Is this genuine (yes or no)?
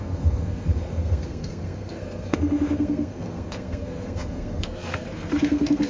no